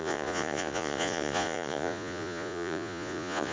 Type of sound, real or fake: fake